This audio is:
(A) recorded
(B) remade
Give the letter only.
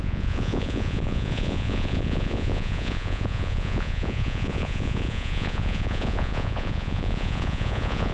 B